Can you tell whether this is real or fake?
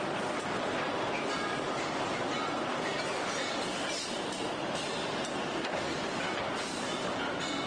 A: real